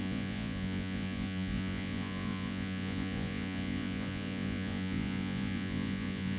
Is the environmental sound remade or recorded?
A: remade